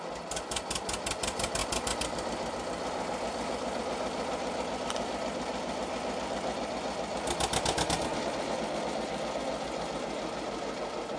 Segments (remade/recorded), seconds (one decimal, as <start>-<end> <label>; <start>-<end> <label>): 0.0-11.2 recorded